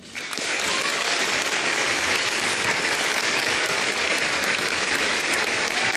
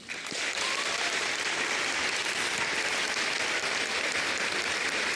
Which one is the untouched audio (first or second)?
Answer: second